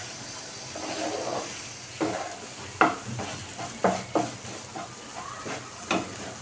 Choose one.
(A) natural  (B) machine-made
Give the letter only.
A